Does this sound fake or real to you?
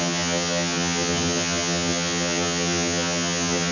fake